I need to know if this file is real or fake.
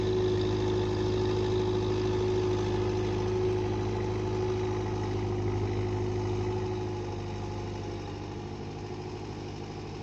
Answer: real